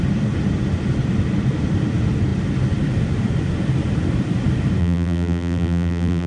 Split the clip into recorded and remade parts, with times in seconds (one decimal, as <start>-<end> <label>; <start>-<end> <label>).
0.0-4.8 recorded; 4.8-6.3 remade